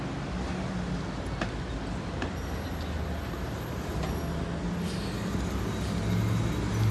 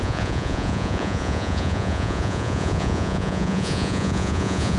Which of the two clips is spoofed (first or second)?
second